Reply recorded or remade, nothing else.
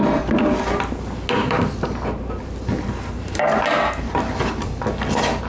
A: recorded